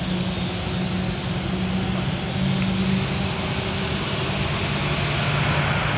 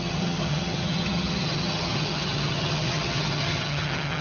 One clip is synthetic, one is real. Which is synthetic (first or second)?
second